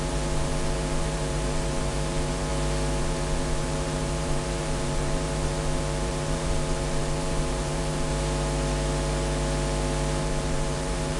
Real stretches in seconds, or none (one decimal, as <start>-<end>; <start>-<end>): 2.5-3.0; 8.1-10.2